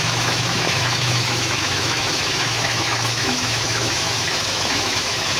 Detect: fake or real fake